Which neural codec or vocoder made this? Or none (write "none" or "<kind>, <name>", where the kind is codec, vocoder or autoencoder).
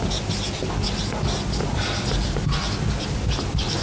none